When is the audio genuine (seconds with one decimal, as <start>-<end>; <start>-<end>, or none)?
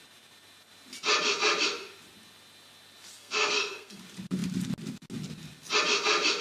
0.0-3.1; 4.0-6.4